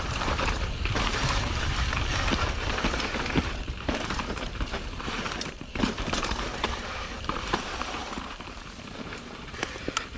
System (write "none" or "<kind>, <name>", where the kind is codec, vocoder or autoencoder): vocoder, BigVGAN v2